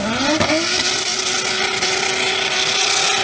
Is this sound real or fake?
real